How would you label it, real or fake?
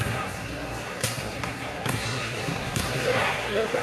fake